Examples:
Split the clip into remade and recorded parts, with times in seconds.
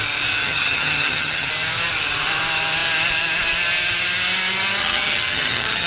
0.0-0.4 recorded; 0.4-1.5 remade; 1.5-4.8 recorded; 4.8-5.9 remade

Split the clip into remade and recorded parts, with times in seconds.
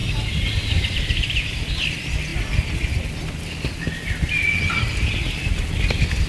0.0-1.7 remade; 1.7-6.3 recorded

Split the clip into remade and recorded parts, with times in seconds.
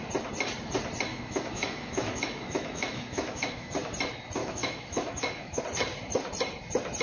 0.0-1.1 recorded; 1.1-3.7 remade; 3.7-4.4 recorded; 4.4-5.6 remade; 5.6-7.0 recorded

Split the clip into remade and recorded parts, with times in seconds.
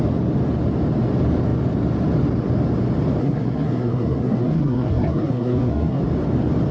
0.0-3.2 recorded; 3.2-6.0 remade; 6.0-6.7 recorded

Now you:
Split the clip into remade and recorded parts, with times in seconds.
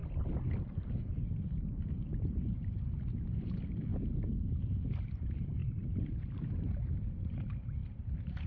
0.0-5.6 recorded; 5.6-8.0 remade; 8.0-8.5 recorded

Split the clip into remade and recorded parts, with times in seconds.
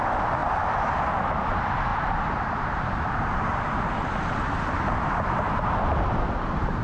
0.0-1.9 recorded; 1.9-4.3 remade; 4.3-6.8 recorded